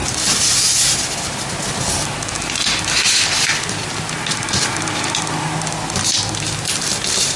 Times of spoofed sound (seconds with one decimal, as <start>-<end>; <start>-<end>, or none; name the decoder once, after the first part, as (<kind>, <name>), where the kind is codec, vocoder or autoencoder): none